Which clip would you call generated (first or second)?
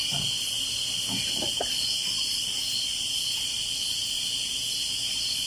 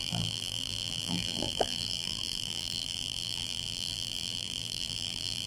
second